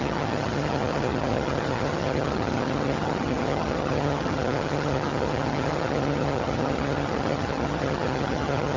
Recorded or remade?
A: remade